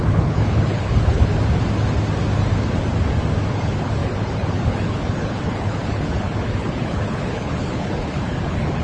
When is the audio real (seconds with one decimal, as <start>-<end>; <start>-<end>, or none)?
1.3-3.5